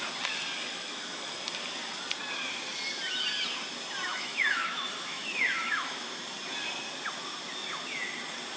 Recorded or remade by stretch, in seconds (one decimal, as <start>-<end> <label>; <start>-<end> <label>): 0.0-0.7 recorded; 0.7-1.4 remade; 1.4-4.1 recorded; 4.1-6.1 remade; 6.1-8.6 recorded

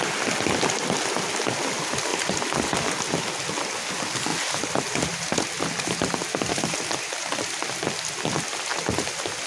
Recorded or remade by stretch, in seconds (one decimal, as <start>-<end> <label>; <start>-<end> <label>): 0.0-9.5 recorded

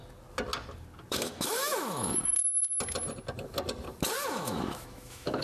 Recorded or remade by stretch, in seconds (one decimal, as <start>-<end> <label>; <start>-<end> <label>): 0.0-1.1 recorded; 1.1-2.4 remade; 2.4-4.3 recorded; 4.3-5.4 remade

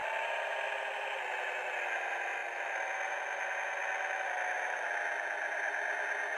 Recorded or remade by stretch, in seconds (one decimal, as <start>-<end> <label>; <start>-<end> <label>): 0.0-6.4 recorded

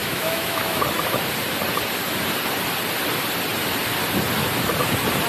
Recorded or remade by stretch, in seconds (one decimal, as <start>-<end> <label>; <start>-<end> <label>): 0.0-0.8 remade; 0.8-5.3 recorded

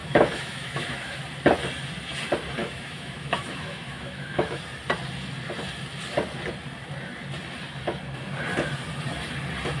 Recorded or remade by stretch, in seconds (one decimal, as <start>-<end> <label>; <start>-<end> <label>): 0.0-1.2 remade; 1.2-2.6 recorded; 2.6-4.6 remade; 4.6-9.8 recorded

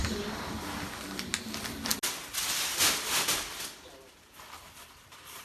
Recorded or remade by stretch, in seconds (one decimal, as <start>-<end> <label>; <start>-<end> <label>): 0.0-5.4 recorded